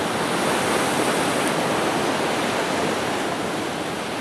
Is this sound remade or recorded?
recorded